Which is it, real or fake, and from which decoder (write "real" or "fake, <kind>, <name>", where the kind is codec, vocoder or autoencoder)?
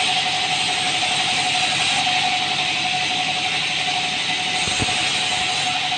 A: real